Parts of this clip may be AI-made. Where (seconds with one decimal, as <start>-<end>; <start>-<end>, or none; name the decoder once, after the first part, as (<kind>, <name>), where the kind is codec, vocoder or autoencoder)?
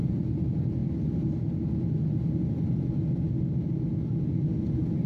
none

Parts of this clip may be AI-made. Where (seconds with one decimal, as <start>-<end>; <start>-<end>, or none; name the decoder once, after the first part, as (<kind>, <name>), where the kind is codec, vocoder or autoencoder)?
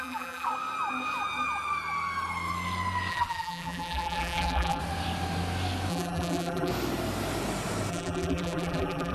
0.0-0.5 (vocoder, BigVGAN v2); 3.1-4.8; 5.9-6.7; 7.9-9.1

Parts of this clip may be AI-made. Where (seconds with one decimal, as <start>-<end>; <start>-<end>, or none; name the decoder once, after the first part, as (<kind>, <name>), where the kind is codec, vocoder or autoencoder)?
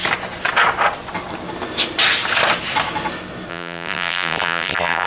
3.5-5.1 (vocoder, BigVGAN v2)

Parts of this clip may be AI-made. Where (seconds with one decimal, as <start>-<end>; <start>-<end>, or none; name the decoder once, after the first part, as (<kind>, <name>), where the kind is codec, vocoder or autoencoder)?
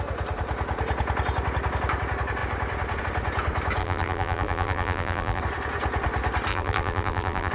3.8-5.4 (vocoder, BigVGAN v2); 6.5-7.5